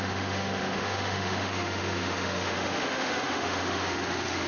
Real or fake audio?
fake